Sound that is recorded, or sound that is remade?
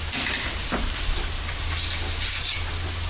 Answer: recorded